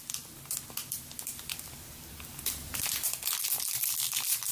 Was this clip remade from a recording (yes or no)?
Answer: no